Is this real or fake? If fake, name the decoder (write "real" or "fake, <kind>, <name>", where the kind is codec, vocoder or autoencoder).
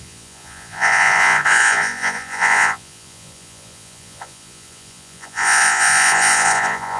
fake, vocoder, Vocos